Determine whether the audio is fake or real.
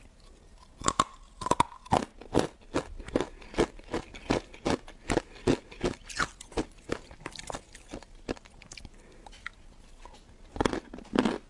real